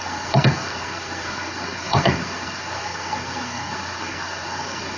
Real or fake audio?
fake